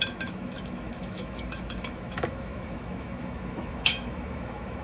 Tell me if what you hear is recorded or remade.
remade